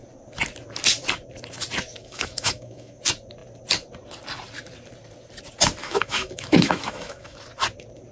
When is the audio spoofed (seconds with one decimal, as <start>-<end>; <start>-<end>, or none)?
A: 2.0-3.0; 5.8-7.4